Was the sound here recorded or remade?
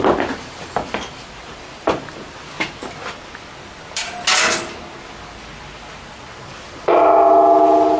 recorded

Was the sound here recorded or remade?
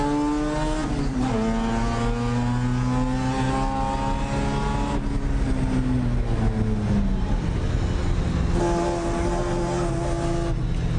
recorded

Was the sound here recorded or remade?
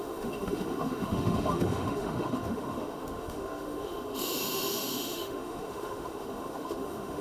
remade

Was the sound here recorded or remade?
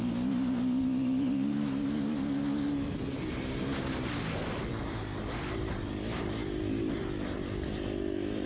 recorded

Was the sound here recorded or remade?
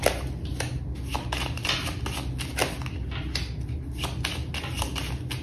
recorded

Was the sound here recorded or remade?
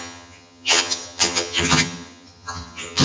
remade